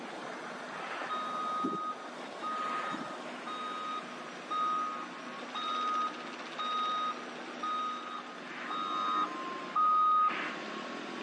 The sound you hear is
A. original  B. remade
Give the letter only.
A